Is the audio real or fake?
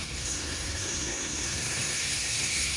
fake